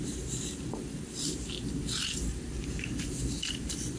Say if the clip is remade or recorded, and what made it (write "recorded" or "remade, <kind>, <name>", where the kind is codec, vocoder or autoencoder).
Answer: remade, vocoder, BigVGAN v2